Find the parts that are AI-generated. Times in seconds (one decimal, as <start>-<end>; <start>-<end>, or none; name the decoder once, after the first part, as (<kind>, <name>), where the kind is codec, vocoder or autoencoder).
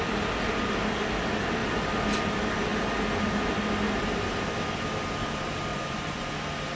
5.7-6.3 (vocoder, Vocos)